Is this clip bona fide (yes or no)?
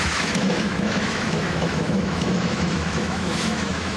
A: no